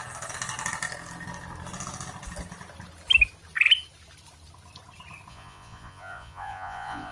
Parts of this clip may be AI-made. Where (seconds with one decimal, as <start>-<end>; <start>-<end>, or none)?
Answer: 5.3-7.1